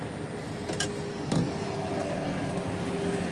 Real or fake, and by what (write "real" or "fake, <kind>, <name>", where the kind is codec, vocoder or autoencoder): real